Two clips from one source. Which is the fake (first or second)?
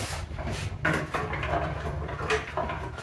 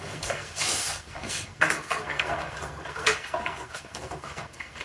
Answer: second